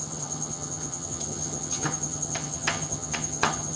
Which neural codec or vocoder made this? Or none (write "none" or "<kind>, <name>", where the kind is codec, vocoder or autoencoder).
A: vocoder, HiFi-GAN